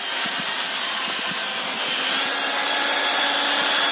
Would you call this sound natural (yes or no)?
yes